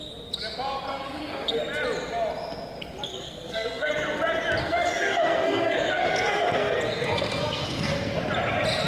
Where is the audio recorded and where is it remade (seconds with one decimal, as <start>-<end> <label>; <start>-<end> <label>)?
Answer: 0.0-0.9 recorded; 0.9-1.6 remade; 1.6-3.1 recorded; 3.1-3.9 remade; 3.9-4.6 recorded; 4.6-8.2 remade; 8.2-8.9 recorded